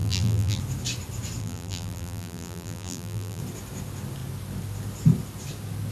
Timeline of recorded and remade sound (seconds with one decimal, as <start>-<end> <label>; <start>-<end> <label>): 0.0-0.6 remade; 0.6-1.4 recorded; 1.4-3.4 remade; 3.4-5.9 recorded